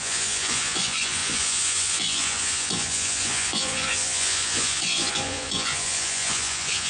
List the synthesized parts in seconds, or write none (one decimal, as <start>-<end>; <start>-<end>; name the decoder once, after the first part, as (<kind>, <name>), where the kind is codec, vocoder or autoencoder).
0.0-6.9 (vocoder, Vocos)